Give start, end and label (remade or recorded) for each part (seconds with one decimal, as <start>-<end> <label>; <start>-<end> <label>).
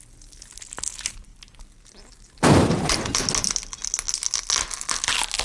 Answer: 0.0-5.4 recorded